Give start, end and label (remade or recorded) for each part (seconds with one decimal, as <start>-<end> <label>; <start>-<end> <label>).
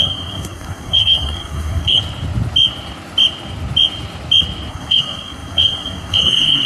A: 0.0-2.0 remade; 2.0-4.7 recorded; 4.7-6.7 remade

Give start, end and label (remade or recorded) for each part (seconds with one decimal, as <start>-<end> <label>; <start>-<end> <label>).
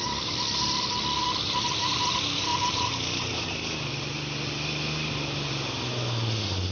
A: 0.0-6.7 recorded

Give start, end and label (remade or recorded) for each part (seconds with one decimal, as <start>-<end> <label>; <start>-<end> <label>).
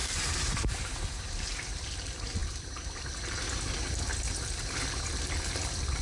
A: 0.0-1.5 remade; 1.5-6.0 recorded